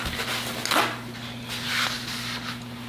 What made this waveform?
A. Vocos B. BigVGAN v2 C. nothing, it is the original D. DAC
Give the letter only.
C